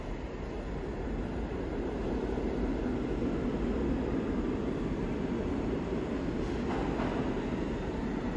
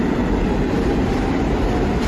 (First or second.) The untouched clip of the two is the first